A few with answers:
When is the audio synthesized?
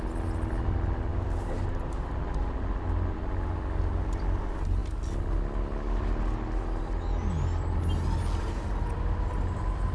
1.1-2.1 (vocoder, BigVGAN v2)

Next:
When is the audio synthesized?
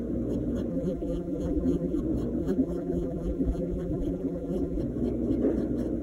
0.7-2.0 (vocoder, BigVGAN v2); 2.4-4.8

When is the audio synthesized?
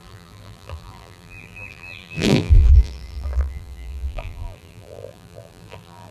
0.0-6.1 (vocoder, BigVGAN v2)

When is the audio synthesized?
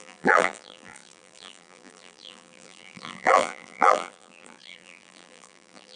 0.0-6.0 (vocoder, BigVGAN v2)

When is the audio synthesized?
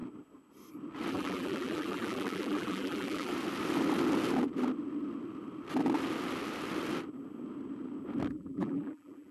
1.1-3.3 (vocoder, BigVGAN v2); 8.3-9.3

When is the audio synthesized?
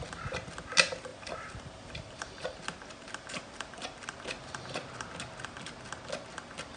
1.1-2.4 (vocoder, BigVGAN v2)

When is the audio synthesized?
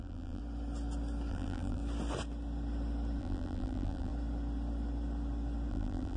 0.0-0.4 (vocoder, BigVGAN v2); 1.3-1.8; 3.2-4.1; 5.7-6.2